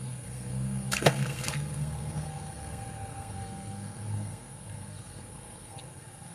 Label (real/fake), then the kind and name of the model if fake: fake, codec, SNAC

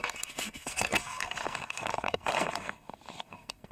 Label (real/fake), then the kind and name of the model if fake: fake, codec, SNAC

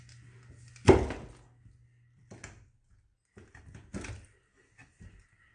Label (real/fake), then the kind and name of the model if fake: real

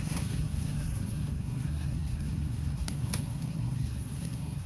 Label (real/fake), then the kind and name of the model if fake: fake, codec, SNAC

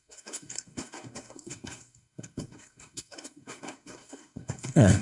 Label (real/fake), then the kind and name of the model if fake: fake, codec, SNAC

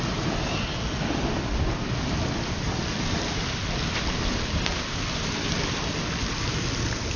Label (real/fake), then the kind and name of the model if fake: real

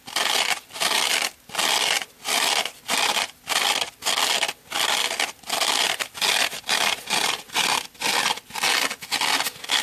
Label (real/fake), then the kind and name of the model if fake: real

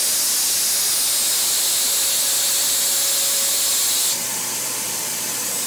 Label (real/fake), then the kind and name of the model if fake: real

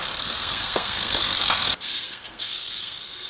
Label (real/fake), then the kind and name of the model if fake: fake, codec, SNAC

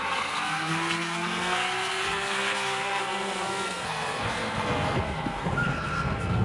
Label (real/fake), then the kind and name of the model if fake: fake, codec, SNAC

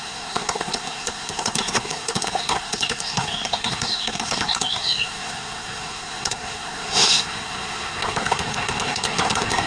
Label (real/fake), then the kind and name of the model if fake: fake, codec, SNAC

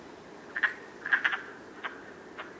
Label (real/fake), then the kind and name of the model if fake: real